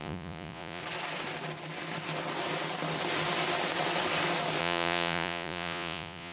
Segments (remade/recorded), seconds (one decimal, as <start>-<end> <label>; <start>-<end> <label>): 0.0-0.8 remade; 0.8-4.6 recorded; 4.6-6.3 remade